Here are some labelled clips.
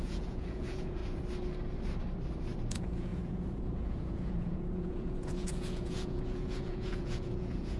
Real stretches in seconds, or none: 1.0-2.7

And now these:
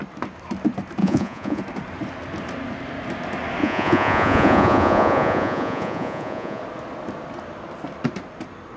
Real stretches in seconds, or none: 0.0-1.0; 1.6-3.6; 6.6-8.8

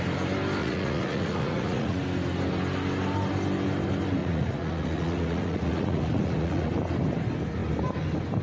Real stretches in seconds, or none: 0.0-0.6; 2.0-4.2; 6.7-8.4

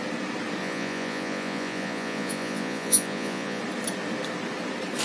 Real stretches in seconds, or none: 0.0-0.6; 3.6-5.0

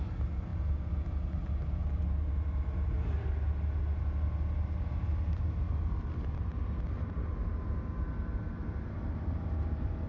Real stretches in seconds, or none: 0.0-10.1